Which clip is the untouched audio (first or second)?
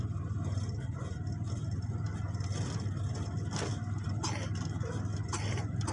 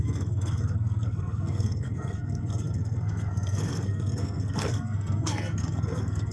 first